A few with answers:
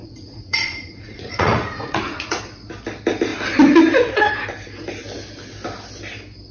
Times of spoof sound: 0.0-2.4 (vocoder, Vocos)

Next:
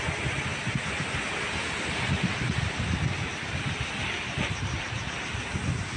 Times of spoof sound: none

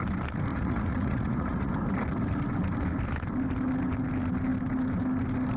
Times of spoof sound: 0.5-1.7 (vocoder, Vocos)

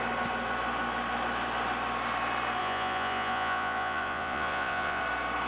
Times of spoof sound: 2.6-5.0 (vocoder, Vocos)